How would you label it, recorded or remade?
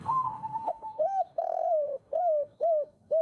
remade